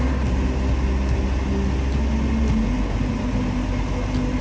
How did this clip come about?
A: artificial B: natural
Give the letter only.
B